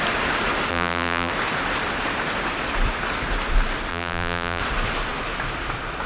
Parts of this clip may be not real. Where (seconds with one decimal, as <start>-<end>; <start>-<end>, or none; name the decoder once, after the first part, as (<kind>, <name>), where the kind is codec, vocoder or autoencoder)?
0.7-1.3 (vocoder, BigVGAN v2); 3.9-4.6